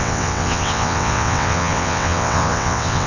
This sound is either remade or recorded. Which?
remade